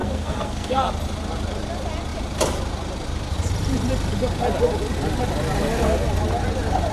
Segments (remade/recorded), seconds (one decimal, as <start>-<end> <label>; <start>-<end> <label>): 0.0-0.9 remade; 0.9-6.9 recorded